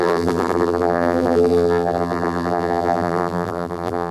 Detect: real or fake fake